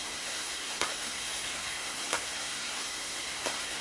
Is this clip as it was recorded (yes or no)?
no